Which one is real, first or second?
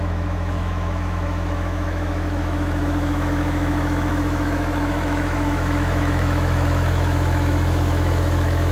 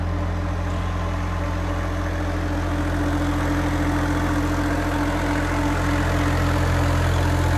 second